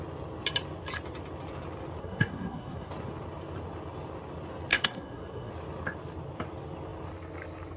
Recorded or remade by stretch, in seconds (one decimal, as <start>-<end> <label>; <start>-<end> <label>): 0.0-2.0 recorded; 2.0-2.9 remade; 2.9-4.7 recorded; 4.7-5.5 remade; 5.5-7.8 recorded